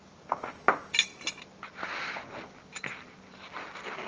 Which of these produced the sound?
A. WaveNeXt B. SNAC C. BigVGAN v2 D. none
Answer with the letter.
D